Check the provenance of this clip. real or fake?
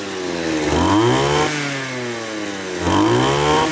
real